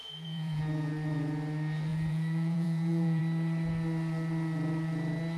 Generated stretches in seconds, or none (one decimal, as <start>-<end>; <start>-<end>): 0.0-0.6; 1.9-3.2